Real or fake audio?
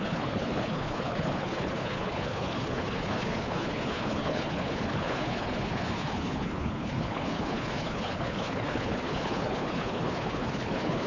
fake